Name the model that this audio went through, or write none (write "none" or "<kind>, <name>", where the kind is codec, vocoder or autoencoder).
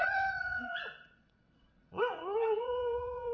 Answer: vocoder, WaveNeXt